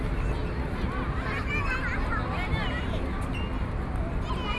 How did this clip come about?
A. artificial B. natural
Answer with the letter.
B